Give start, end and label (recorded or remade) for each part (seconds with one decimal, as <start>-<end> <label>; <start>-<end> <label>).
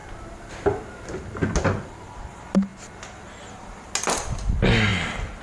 0.0-5.4 recorded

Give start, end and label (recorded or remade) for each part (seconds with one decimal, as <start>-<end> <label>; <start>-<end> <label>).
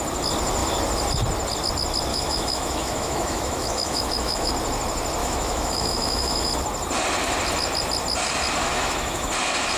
0.0-2.1 recorded; 2.1-4.5 remade; 4.5-5.2 recorded; 5.2-6.5 remade; 6.5-8.6 recorded; 8.6-9.3 remade; 9.3-9.8 recorded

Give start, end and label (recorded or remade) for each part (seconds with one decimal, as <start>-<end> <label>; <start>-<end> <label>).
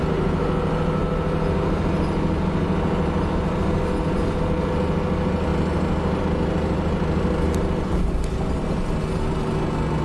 0.0-10.0 recorded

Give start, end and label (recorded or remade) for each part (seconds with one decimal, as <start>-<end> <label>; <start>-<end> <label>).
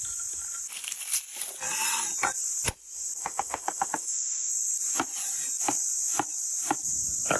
0.0-3.2 recorded; 3.2-4.5 remade; 4.5-7.4 recorded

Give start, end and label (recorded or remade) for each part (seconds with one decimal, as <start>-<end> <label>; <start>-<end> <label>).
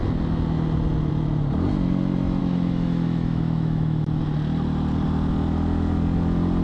0.0-2.4 recorded; 2.4-4.2 remade; 4.2-6.6 recorded